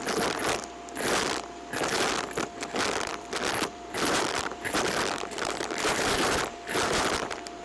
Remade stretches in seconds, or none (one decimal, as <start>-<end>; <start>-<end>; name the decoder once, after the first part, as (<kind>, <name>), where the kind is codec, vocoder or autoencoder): 3.1-7.6 (vocoder, BigVGAN v2)